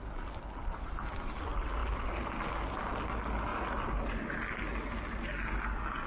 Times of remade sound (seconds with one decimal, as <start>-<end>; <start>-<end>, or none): 0.6-1.2